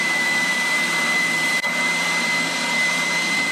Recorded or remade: remade